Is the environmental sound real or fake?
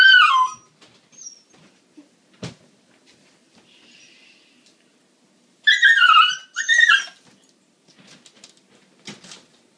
real